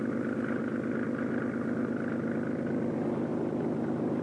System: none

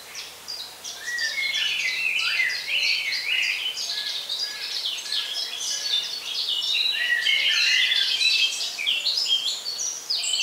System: vocoder, BigVGAN v2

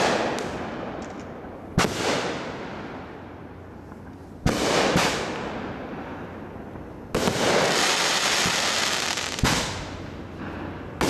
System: none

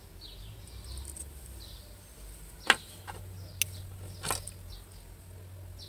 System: none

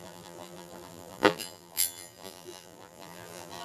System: vocoder, BigVGAN v2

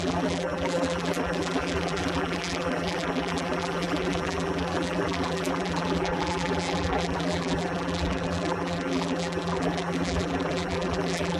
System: vocoder, BigVGAN v2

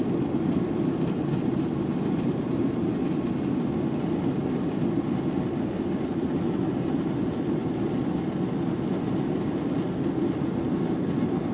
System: none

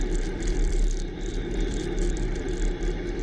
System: vocoder, BigVGAN v2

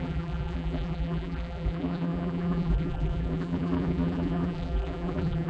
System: vocoder, BigVGAN v2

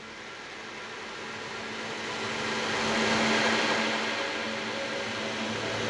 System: none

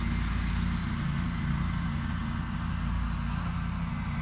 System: none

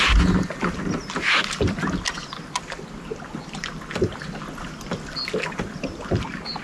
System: none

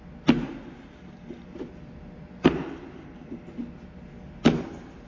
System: none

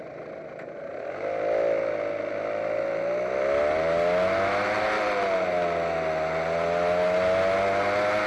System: none